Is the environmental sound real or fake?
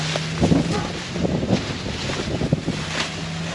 real